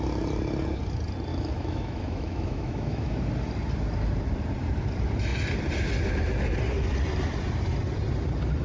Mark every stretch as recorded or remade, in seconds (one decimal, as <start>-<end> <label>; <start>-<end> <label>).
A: 0.0-1.3 recorded; 1.3-3.2 remade; 3.2-8.6 recorded